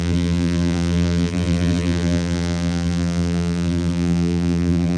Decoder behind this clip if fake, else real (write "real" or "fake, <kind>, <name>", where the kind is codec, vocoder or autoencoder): fake, vocoder, BigVGAN v2